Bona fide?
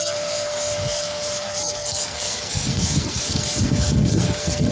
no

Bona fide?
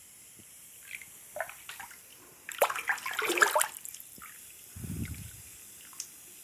yes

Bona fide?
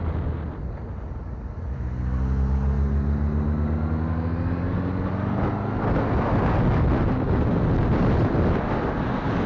yes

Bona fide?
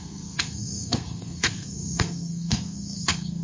no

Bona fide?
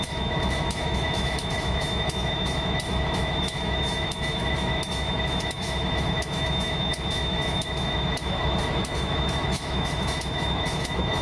no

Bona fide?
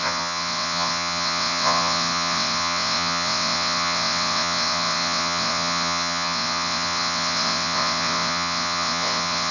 no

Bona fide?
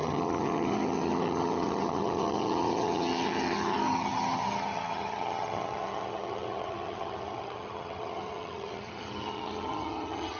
no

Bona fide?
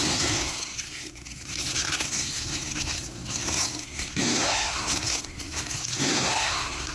no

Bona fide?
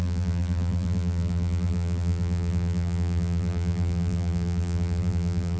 no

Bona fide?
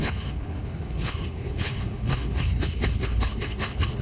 no